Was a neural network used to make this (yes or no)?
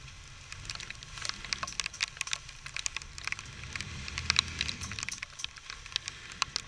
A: no